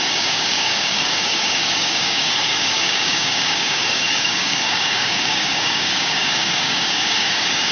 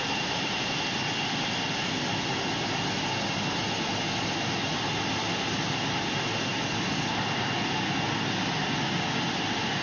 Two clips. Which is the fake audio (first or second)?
first